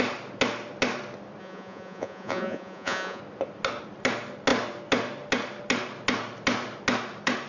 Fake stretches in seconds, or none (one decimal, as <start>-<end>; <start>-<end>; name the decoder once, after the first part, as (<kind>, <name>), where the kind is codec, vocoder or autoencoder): 1.4-3.2 (vocoder, Vocos)